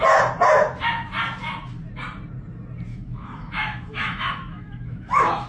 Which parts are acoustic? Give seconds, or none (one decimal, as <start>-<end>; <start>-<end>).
0.0-2.9